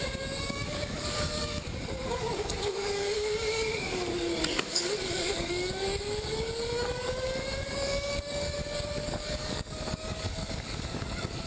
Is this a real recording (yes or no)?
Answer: no